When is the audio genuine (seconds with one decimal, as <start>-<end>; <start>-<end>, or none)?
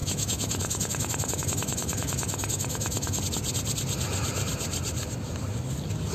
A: 3.2-6.1